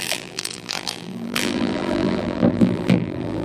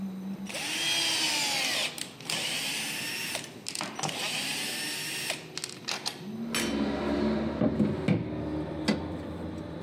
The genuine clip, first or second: second